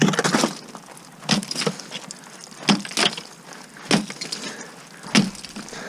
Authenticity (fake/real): real